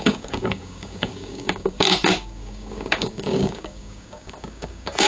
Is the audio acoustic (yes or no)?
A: no